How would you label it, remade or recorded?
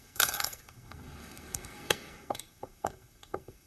remade